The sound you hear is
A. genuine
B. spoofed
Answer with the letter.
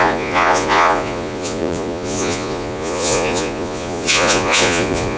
B